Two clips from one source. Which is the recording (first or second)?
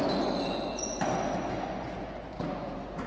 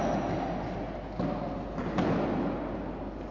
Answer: second